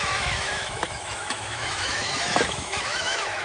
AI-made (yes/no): yes